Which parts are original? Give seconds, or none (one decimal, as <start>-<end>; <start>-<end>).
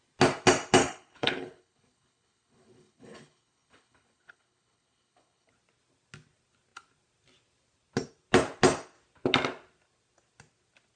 0.0-0.8; 5.5-11.0